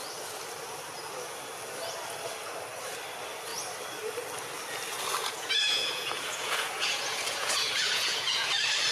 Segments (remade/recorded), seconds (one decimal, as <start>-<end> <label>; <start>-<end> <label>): 0.0-5.2 recorded; 5.2-8.5 remade; 8.5-8.9 recorded